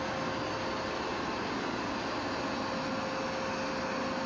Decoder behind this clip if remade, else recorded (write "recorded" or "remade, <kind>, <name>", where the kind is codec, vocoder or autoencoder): recorded